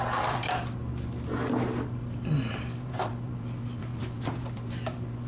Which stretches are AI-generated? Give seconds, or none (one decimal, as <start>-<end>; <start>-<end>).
0.0-0.4; 2.5-5.3